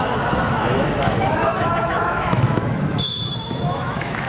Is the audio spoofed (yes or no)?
yes